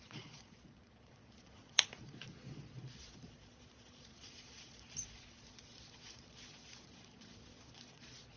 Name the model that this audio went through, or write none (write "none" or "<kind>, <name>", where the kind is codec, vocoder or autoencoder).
vocoder, Vocos